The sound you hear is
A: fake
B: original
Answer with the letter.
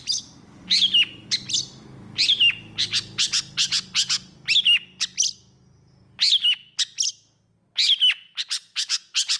B